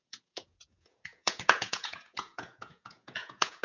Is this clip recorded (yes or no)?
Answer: no